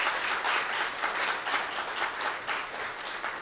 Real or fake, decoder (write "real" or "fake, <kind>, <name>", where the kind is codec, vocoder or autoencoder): real